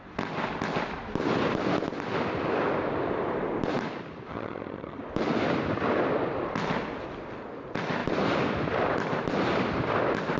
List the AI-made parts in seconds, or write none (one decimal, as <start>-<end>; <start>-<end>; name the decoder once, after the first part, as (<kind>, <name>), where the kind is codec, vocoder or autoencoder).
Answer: 4.3-5.0 (vocoder, HiFi-GAN)